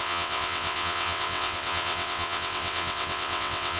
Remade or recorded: remade